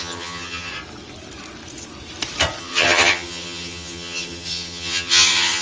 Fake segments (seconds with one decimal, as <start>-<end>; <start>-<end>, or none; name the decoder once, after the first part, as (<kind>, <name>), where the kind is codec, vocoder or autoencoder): 0.0-0.7 (vocoder, HiFi-GAN); 2.6-5.6